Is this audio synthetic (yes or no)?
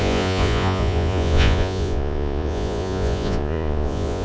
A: yes